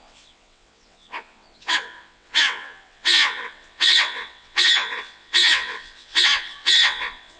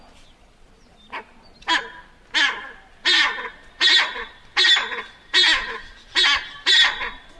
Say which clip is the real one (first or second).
second